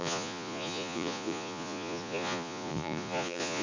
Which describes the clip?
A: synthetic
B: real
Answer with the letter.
A